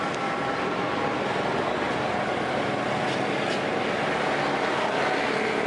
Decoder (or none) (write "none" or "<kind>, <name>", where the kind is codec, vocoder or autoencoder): none